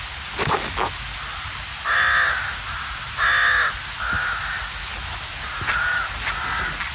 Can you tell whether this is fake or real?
real